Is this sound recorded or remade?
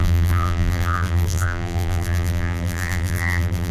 remade